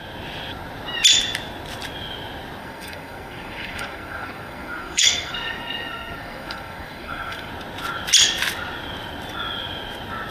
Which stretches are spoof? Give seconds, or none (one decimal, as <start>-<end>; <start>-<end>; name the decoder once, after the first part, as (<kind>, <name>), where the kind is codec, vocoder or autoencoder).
2.6-7.5 (codec, SNAC)